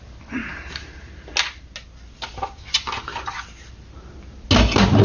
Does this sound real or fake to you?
real